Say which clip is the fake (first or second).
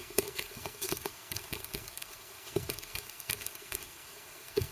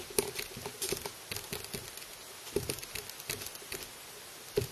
first